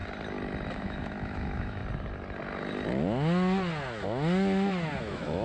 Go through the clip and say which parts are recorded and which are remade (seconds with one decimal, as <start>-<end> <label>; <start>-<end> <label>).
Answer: 0.0-0.7 recorded; 0.7-1.8 remade; 1.8-5.0 recorded; 5.0-5.4 remade